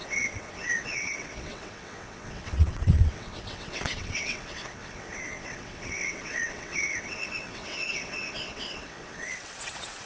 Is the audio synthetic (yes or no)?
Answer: yes